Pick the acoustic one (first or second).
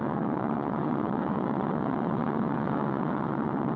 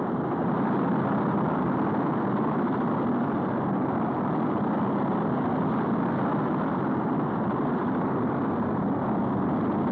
second